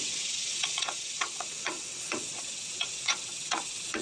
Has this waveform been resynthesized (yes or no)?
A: yes